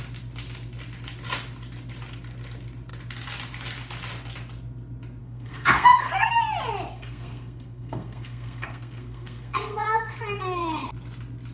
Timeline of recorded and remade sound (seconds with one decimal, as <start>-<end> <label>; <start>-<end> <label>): 0.0-5.2 recorded; 5.2-6.4 remade; 6.4-6.9 recorded; 6.9-10.9 remade; 10.9-11.5 recorded